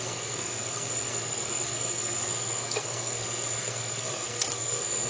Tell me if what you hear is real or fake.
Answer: fake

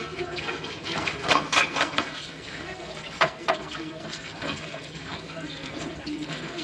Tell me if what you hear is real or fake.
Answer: fake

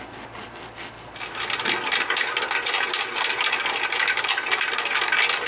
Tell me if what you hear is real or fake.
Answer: real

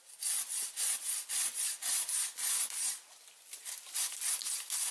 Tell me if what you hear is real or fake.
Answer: real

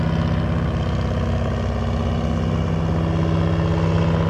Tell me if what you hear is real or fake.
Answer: real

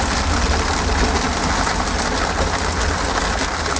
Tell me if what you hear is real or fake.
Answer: real